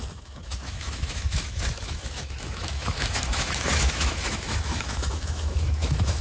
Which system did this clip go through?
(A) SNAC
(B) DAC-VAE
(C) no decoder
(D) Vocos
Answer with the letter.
B